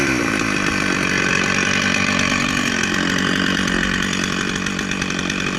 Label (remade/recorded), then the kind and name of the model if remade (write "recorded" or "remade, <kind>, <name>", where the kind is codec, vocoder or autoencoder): recorded